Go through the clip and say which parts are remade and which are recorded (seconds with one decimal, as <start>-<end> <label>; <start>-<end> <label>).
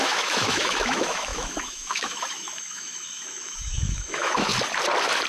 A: 0.0-4.5 remade; 4.5-5.3 recorded